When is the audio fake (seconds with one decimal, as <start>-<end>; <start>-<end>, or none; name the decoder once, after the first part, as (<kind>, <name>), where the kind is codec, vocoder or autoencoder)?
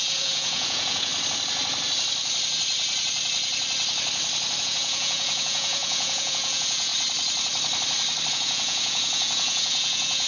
0.0-1.1 (vocoder, Vocos); 4.6-6.9; 8.3-10.3